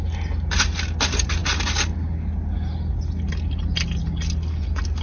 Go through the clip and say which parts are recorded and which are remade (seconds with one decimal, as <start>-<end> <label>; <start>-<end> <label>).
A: 0.0-5.0 recorded